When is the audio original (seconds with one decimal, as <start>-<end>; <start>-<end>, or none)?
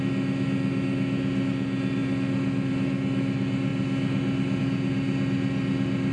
0.0-6.1